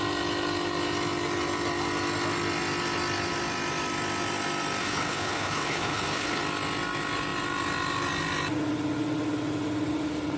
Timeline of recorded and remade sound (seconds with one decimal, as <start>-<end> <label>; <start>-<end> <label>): 0.0-4.8 recorded; 4.8-6.4 remade; 6.4-10.4 recorded